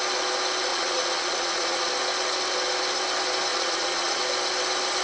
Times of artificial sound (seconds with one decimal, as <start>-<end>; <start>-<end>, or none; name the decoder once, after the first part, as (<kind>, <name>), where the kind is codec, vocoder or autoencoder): 0.7-1.9 (vocoder, Vocos); 3.5-4.2